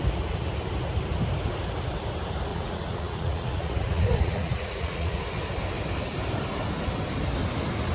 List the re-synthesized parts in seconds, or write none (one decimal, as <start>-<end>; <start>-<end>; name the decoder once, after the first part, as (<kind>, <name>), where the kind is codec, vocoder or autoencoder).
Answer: 2.5-5.2 (vocoder, Vocos)